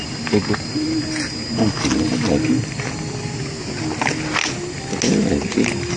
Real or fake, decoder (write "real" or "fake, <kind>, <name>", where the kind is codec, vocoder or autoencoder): real